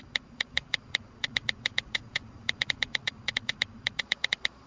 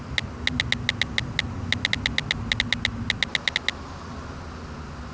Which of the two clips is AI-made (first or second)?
first